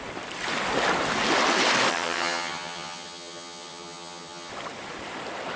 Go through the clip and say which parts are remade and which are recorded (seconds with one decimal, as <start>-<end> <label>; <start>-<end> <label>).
0.0-1.9 recorded; 1.9-4.5 remade; 4.5-5.6 recorded